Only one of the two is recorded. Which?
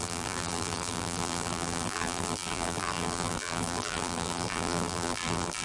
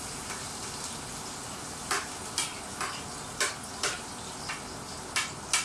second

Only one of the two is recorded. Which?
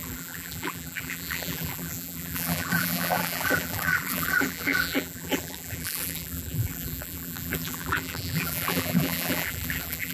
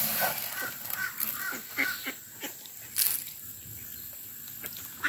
second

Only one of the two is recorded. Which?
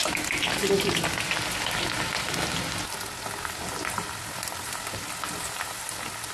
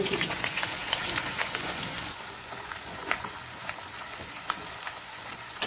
first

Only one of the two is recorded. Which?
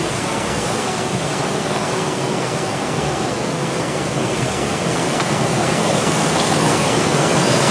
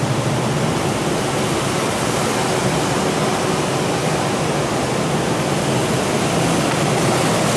second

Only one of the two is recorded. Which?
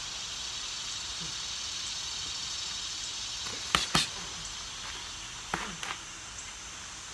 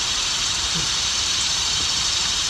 first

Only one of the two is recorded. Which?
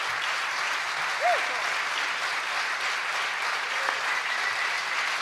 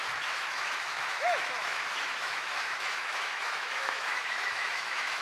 first